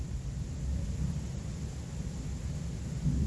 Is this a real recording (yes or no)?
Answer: yes